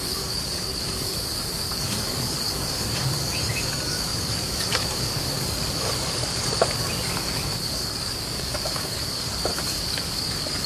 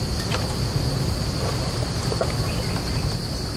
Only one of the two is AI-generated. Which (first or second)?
first